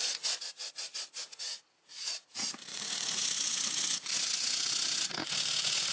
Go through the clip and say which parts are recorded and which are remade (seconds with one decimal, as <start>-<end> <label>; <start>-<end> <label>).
0.0-2.7 recorded; 2.7-4.0 remade; 4.0-5.2 recorded; 5.2-5.9 remade

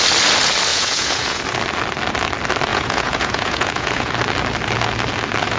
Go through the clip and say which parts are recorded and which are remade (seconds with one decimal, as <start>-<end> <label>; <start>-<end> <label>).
0.0-0.7 recorded; 0.7-1.4 remade; 1.4-2.7 recorded; 2.7-4.1 remade; 4.1-5.6 recorded

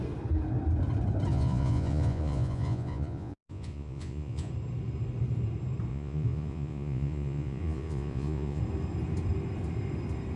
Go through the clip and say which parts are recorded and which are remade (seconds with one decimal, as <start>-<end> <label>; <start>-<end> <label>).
0.0-1.3 recorded; 1.3-4.5 remade; 4.5-5.9 recorded; 5.9-8.6 remade; 8.6-10.4 recorded